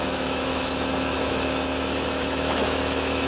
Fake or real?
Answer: fake